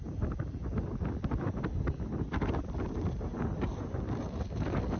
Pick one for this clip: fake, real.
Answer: real